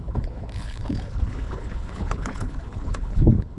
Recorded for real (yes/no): no